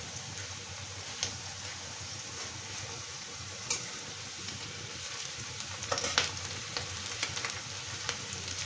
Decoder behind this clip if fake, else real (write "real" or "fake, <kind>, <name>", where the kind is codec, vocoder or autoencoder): fake, vocoder, BigVGAN v2